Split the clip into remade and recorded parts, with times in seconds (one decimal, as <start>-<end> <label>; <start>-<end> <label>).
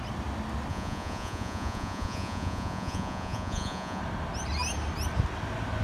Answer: 0.0-0.7 recorded; 0.7-4.0 remade; 4.0-5.8 recorded